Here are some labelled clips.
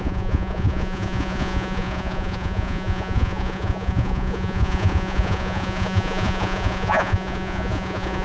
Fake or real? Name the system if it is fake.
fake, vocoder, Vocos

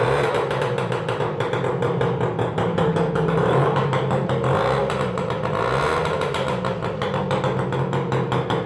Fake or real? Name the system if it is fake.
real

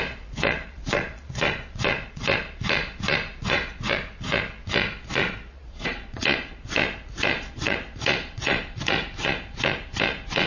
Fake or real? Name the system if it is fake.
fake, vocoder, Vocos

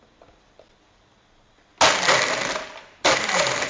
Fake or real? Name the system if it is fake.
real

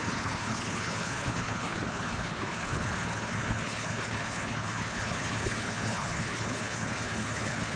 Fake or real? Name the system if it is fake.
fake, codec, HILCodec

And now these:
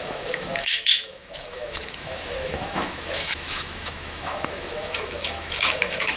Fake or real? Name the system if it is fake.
fake, autoencoder, DAC-VAE